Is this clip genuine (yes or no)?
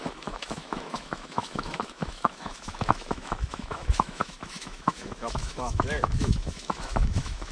no